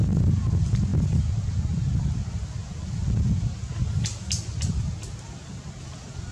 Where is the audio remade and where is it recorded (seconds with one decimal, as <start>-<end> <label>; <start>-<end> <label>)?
0.0-6.3 recorded